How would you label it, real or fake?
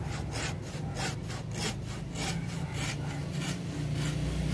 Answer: real